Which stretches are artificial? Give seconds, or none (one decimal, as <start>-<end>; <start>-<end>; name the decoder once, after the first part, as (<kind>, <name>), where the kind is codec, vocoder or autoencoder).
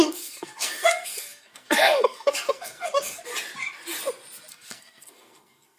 0.0-3.3 (codec, SNAC); 4.5-5.8